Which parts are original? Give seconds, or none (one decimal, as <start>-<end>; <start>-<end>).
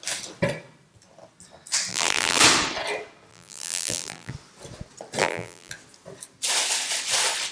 0.0-1.9; 2.4-3.3; 4.3-5.2; 5.7-7.5